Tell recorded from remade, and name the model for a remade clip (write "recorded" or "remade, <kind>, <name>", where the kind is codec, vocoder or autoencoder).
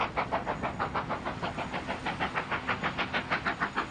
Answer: recorded